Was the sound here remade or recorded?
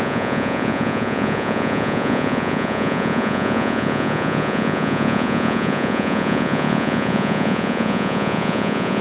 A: remade